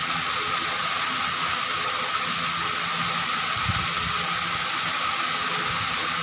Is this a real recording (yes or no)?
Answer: yes